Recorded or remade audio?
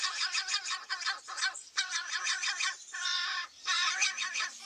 remade